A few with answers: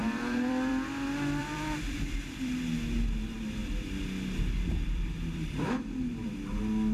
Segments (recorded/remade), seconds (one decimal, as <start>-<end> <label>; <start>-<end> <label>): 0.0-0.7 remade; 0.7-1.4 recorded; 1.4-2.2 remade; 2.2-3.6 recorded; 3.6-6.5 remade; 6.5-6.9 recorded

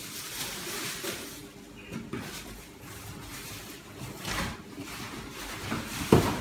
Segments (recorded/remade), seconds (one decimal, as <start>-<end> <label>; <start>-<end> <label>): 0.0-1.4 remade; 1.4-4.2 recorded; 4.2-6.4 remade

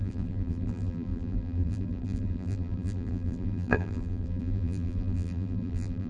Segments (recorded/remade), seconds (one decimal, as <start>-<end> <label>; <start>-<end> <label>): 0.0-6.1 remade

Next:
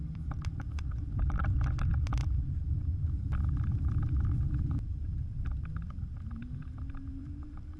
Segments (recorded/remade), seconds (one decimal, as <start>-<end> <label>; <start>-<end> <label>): 0.0-7.8 remade